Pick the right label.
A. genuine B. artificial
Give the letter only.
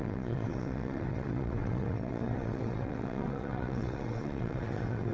B